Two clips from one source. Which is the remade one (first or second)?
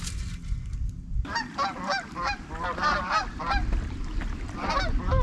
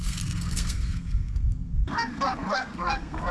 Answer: second